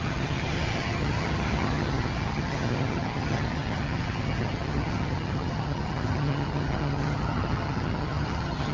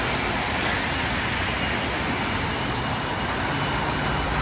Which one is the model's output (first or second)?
first